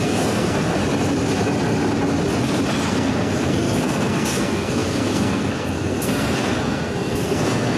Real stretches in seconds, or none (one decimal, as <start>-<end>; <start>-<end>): 0.8-2.9